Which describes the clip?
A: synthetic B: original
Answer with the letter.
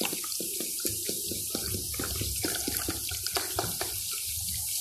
B